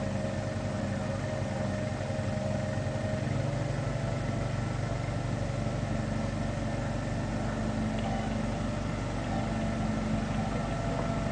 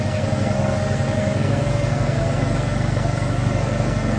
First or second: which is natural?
first